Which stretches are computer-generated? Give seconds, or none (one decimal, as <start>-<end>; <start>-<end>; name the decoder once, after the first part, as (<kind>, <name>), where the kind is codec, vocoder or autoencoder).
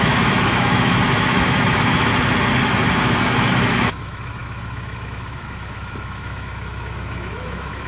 0.0-2.1 (autoencoder, DAC-VAE); 2.6-7.9